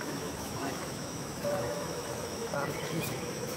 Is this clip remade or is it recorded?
remade